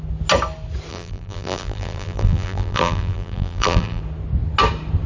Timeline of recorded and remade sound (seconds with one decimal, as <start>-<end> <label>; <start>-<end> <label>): 0.0-0.9 recorded; 0.9-4.0 remade; 4.0-5.1 recorded